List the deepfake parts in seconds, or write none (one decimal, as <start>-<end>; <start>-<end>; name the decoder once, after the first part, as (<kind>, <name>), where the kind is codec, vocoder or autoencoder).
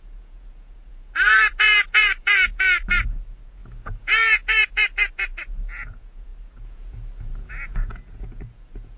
0.0-9.0 (vocoder, Vocos)